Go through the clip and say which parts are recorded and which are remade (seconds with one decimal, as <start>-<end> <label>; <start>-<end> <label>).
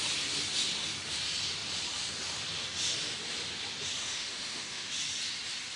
0.0-4.0 recorded; 4.0-4.9 remade; 4.9-5.8 recorded